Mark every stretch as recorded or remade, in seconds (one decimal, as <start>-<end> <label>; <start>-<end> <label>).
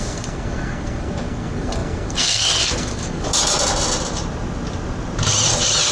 0.0-3.3 remade; 3.3-5.9 recorded